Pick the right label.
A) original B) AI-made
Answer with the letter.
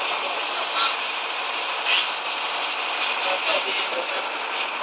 A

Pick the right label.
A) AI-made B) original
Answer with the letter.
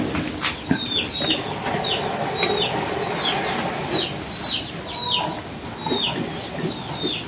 B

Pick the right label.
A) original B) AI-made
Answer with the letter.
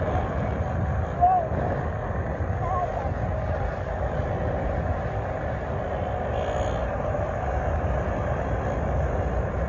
A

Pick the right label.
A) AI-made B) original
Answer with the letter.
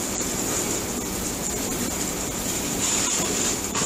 B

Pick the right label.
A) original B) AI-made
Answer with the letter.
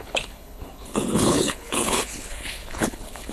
B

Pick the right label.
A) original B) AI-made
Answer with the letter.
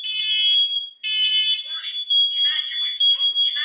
A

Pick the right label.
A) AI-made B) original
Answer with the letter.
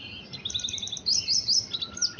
B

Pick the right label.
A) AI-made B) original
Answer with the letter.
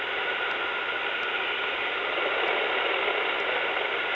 B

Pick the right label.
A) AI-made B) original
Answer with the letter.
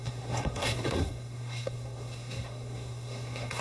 A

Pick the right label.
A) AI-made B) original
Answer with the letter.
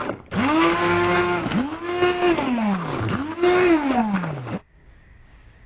A